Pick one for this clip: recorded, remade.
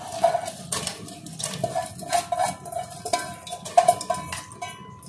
recorded